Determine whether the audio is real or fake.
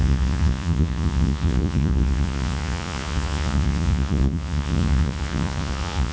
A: fake